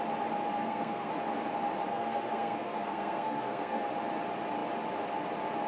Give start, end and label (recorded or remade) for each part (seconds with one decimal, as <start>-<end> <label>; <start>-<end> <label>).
0.0-0.5 recorded; 0.5-1.1 remade; 1.1-1.9 recorded; 1.9-3.8 remade; 3.8-5.7 recorded